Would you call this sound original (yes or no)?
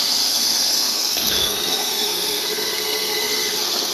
no